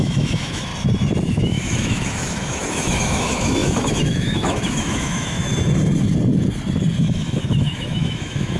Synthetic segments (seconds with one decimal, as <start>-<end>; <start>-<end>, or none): 0.0-0.7; 1.4-5.5; 7.0-8.6